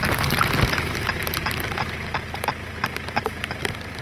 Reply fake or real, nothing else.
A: real